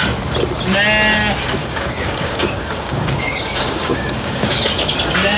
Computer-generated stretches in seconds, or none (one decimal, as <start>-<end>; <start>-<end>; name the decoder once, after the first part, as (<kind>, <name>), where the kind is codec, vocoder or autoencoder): 1.6-4.7 (codec, DAC)